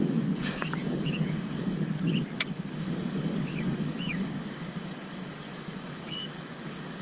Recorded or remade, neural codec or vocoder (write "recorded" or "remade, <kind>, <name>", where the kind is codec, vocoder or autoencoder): remade, codec, DAC